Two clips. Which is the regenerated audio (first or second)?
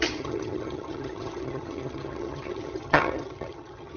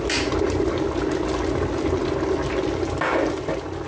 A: first